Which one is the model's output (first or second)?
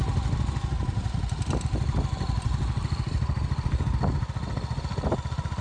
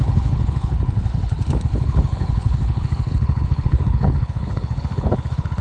second